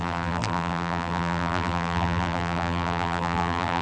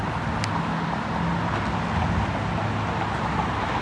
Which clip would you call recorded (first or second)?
second